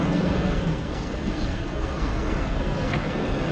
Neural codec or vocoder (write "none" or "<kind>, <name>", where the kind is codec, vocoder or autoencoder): codec, SNAC